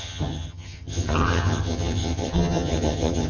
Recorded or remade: remade